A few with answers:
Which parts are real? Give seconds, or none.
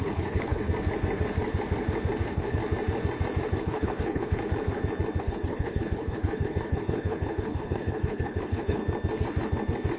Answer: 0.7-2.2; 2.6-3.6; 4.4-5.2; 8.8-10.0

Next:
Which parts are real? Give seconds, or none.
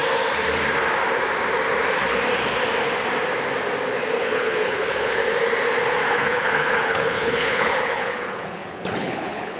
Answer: 0.0-4.2; 5.2-6.1